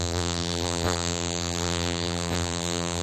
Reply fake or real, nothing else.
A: fake